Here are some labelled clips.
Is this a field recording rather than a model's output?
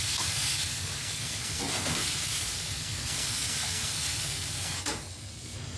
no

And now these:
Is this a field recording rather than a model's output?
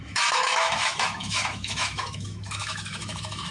no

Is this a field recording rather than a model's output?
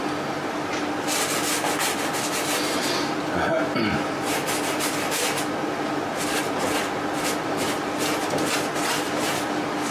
yes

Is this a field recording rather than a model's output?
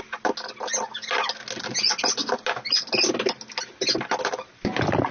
yes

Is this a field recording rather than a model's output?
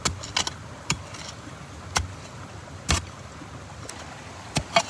yes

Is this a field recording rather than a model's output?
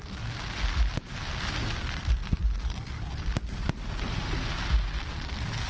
no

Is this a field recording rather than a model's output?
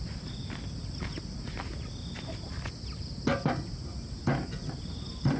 yes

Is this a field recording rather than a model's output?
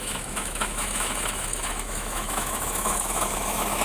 no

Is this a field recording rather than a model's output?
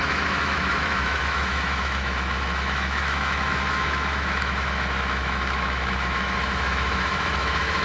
no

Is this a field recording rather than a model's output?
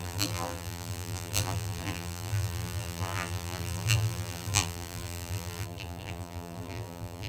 no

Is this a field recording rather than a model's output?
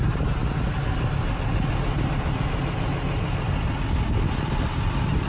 yes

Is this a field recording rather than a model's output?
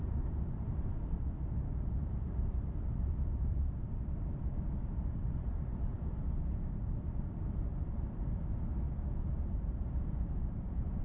no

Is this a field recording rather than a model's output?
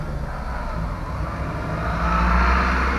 yes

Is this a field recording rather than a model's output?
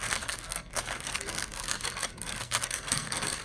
no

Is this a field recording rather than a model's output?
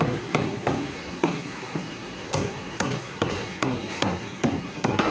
no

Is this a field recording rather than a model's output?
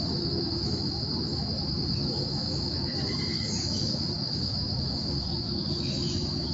no